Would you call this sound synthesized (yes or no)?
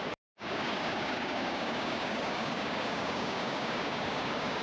yes